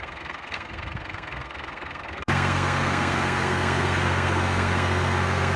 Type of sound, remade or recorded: remade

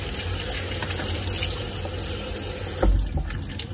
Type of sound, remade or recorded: recorded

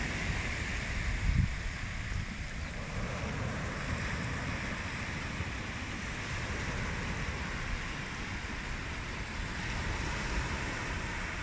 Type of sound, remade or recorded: recorded